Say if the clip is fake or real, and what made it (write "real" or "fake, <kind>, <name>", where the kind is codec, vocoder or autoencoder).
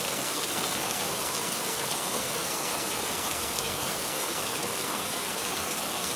fake, codec, SNAC